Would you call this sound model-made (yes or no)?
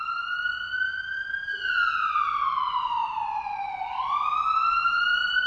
no